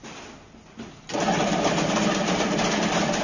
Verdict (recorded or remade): recorded